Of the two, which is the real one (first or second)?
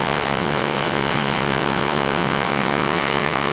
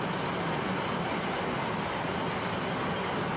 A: second